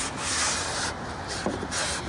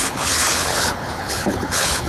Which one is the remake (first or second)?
second